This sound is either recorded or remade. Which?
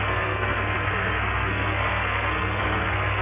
remade